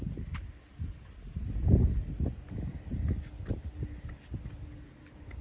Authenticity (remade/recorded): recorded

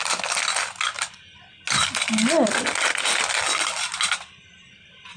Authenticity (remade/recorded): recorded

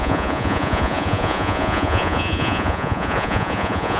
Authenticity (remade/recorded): remade